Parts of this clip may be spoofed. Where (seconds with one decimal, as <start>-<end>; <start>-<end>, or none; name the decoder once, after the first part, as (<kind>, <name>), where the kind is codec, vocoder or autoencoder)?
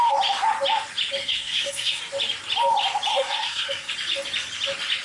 1.2-2.0 (codec, SNAC); 3.1-3.9